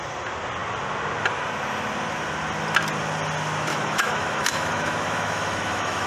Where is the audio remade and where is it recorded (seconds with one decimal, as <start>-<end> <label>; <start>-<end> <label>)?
0.0-3.7 recorded; 3.7-6.1 remade